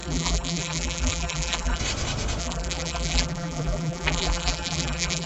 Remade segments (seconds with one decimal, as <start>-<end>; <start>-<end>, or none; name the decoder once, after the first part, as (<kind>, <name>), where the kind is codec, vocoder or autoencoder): 0.0-1.8 (vocoder, BigVGAN v2); 2.4-5.3

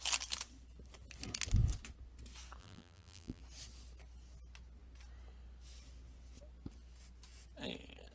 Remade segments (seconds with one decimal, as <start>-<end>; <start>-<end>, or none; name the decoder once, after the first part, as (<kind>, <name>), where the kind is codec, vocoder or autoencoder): 2.6-3.4 (vocoder, BigVGAN v2)

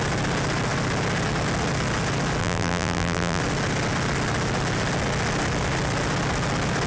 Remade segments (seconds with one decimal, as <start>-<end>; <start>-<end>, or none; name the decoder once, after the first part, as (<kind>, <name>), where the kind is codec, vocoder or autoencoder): 2.4-3.4 (vocoder, BigVGAN v2)

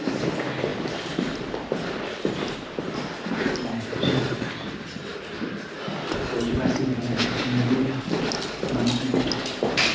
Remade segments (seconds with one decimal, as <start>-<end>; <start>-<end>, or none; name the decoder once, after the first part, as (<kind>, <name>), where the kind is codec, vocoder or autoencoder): 0.7-3.3 (vocoder, BigVGAN v2)

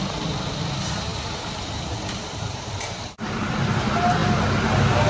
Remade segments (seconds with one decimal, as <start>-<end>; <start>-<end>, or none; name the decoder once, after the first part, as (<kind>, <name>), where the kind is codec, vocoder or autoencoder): 1.1-3.4 (vocoder, BigVGAN v2)

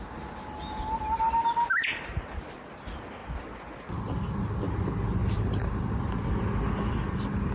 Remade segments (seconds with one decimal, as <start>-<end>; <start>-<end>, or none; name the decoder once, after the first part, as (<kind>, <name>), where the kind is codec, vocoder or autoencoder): 5.2-6.0 (vocoder, BigVGAN v2)

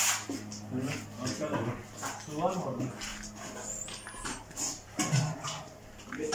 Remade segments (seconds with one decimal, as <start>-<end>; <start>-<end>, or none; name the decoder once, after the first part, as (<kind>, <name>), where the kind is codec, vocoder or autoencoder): none